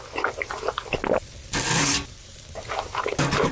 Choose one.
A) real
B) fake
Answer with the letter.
A